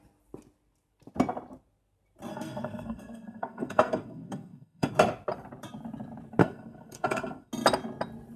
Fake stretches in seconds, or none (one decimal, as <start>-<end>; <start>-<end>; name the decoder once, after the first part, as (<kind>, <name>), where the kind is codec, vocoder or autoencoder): 2.3-4.9 (codec, SNAC); 6.4-7.5